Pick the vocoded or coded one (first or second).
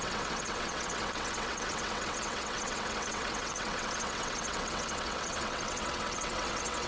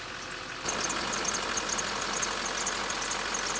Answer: first